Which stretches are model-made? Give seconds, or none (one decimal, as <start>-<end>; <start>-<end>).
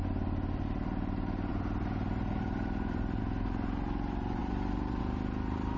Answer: 1.5-3.2; 4.4-5.0